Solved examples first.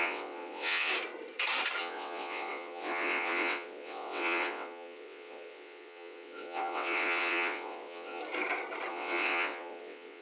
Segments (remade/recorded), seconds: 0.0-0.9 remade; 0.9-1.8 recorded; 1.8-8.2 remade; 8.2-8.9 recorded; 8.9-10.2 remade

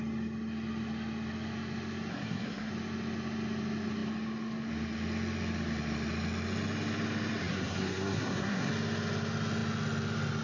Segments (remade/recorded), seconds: 0.0-2.1 recorded; 2.1-2.7 remade; 2.7-7.4 recorded; 7.4-8.7 remade; 8.7-10.4 recorded

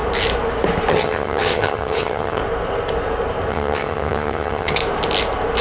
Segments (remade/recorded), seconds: 0.0-0.9 recorded; 0.9-2.4 remade; 2.4-3.5 recorded; 3.5-4.8 remade; 4.8-5.6 recorded

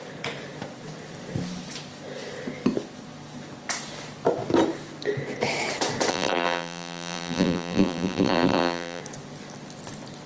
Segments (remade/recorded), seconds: 0.0-6.1 recorded; 6.1-9.0 remade; 9.0-10.3 recorded

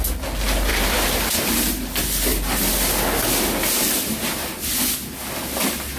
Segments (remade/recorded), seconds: 0.0-0.7 recorded; 0.7-1.5 remade; 1.5-6.0 recorded

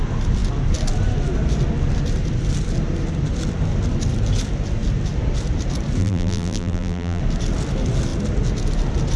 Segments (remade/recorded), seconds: 0.0-6.0 recorded; 6.0-7.2 remade; 7.2-9.2 recorded